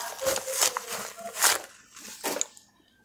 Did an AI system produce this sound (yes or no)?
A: no